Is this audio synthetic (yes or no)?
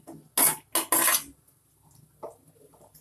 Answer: no